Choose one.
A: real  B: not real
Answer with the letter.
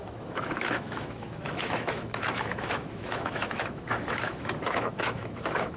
B